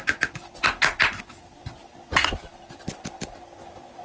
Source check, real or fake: real